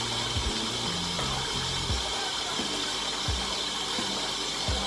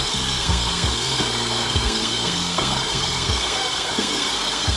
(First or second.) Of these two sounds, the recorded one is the first